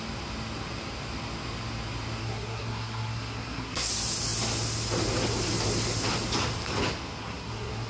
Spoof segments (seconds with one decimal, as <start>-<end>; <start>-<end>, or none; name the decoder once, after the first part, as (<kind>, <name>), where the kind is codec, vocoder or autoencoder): 2.2-3.9 (codec, SNAC); 7.2-7.9